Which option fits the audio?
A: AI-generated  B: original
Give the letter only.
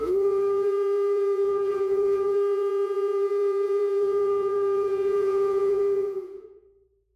A